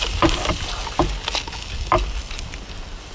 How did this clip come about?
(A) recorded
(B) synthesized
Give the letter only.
A